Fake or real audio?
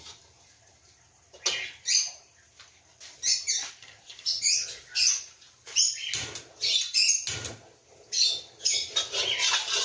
real